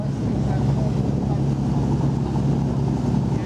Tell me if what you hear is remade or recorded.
recorded